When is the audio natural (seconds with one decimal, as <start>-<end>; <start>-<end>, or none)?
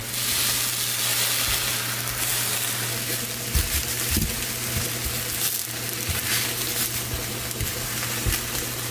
0.0-8.9